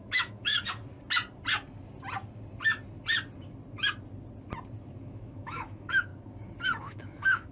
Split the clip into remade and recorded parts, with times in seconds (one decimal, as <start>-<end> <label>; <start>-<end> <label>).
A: 0.0-0.5 remade; 0.5-5.0 recorded; 5.0-6.1 remade; 6.1-6.8 recorded; 6.8-7.5 remade